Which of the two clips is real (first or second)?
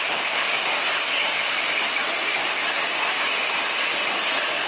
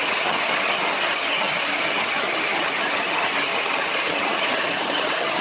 first